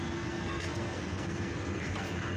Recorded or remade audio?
remade